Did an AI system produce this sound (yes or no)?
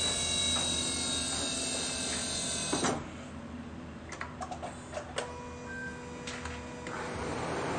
no